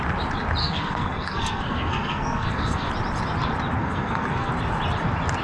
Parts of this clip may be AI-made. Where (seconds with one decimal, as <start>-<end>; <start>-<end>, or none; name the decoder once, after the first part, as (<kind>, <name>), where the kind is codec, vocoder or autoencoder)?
0.6-2.9 (codec, SNAC); 3.8-4.5